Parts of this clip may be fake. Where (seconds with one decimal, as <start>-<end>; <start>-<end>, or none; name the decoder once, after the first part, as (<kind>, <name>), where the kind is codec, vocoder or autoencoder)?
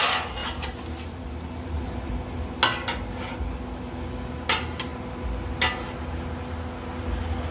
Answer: 0.4-2.1 (vocoder, BigVGAN v2)